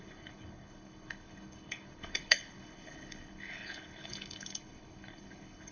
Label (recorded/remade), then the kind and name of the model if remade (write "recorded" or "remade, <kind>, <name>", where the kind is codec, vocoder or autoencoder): remade, codec, HILCodec